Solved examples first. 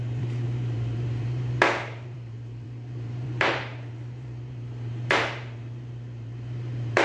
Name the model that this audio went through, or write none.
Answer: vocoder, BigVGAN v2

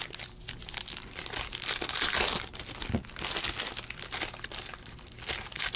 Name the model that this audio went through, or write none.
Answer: none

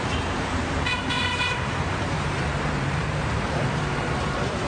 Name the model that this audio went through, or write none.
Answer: vocoder, BigVGAN v2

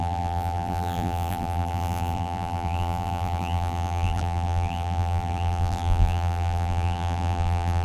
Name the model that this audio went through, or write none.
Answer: vocoder, BigVGAN v2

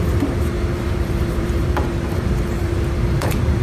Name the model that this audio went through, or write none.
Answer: vocoder, BigVGAN v2